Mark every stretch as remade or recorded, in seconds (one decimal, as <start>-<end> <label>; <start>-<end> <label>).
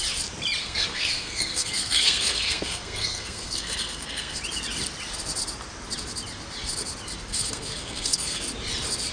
0.0-0.6 recorded; 0.6-4.4 remade; 4.4-7.3 recorded; 7.3-8.4 remade; 8.4-9.1 recorded